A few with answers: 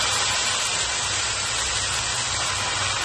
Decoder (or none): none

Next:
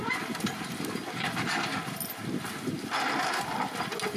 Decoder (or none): none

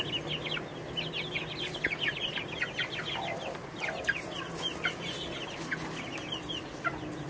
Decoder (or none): none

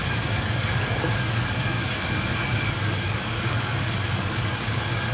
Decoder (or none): codec, DAC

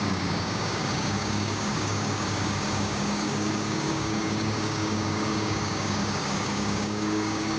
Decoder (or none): codec, DAC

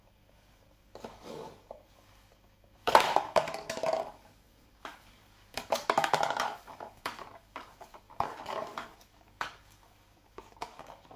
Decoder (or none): codec, DAC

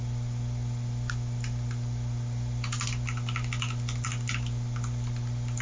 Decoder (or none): none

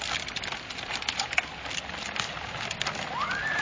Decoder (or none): none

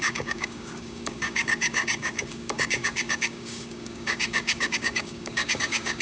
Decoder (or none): codec, DAC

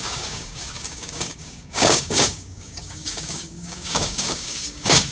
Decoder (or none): codec, DAC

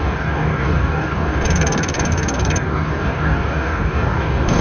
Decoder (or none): codec, DAC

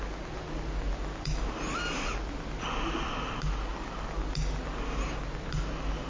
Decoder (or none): none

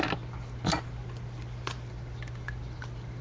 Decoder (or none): none